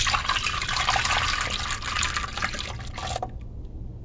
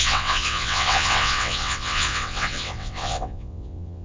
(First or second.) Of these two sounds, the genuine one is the first